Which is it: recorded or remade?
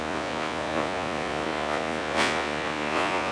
remade